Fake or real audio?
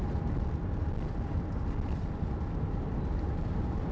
real